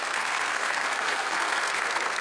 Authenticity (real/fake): fake